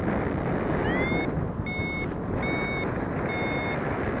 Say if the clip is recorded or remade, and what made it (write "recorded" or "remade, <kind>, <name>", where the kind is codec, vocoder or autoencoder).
recorded